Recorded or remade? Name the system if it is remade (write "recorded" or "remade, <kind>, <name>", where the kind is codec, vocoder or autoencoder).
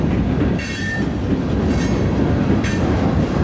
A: recorded